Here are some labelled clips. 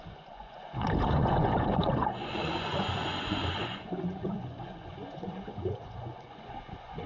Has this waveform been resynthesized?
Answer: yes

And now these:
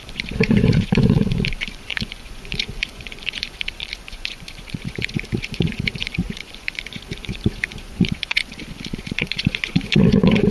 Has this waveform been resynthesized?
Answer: yes